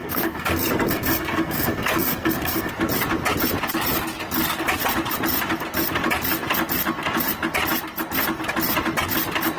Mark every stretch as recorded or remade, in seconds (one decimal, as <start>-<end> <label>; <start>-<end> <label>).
0.0-2.7 remade; 2.7-9.6 recorded